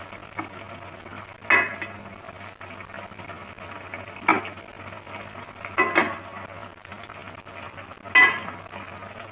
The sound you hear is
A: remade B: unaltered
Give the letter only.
B